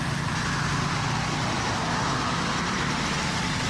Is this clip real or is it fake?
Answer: real